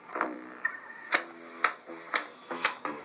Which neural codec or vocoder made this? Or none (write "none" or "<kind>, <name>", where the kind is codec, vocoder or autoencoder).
vocoder, BigVGAN v2